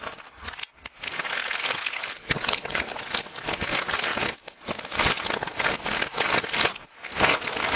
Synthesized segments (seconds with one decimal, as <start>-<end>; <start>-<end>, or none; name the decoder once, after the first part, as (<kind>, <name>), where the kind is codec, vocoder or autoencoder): 1.8-3.0 (codec, HILCodec)